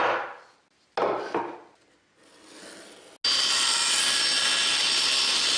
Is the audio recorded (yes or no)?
yes